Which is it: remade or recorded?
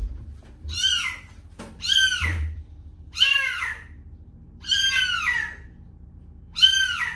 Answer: remade